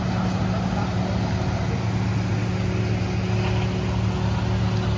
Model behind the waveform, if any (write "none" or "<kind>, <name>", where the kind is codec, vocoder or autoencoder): none